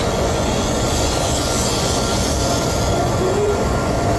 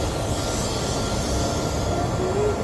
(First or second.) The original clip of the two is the second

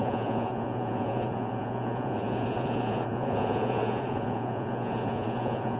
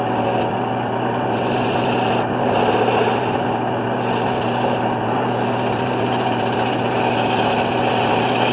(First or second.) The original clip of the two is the second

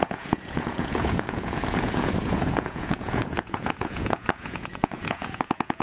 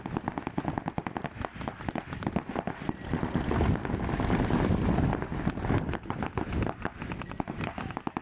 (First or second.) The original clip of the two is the second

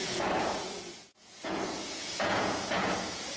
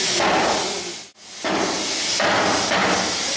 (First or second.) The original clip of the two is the second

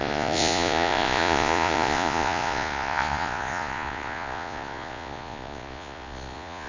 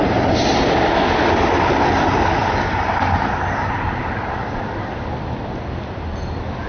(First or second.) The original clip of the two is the second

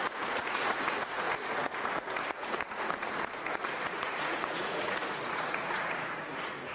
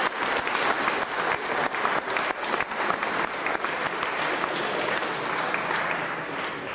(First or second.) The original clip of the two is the second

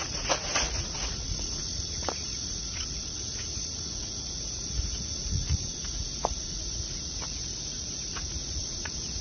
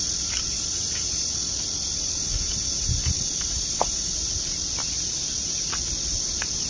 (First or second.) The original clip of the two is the second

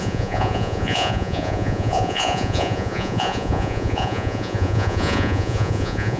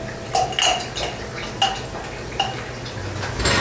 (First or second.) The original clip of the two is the second